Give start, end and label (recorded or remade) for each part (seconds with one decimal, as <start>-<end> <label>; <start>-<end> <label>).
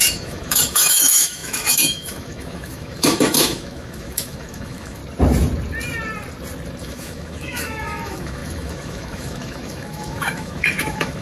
0.0-5.0 remade; 5.0-6.8 recorded; 6.8-11.2 remade